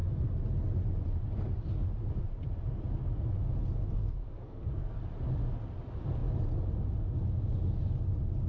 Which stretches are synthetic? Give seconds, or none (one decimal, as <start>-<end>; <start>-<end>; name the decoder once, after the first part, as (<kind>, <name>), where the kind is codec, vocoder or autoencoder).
4.0-5.0 (codec, SNAC)